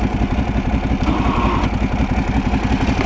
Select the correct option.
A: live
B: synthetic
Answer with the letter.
A